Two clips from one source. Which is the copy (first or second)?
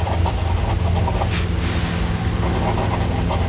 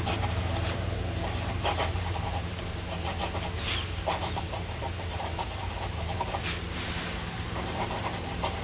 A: second